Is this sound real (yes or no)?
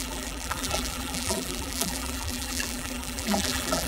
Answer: no